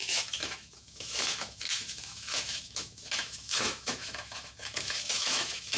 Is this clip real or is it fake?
fake